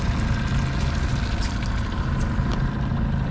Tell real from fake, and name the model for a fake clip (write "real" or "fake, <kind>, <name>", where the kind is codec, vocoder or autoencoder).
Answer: real